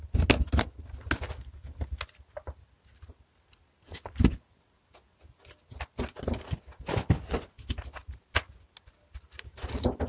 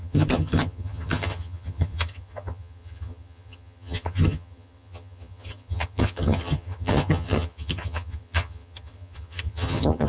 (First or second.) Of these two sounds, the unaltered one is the first